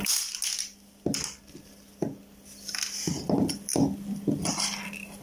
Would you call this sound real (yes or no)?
yes